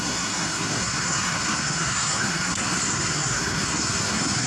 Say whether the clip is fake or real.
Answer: fake